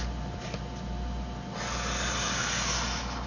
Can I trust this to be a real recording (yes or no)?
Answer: yes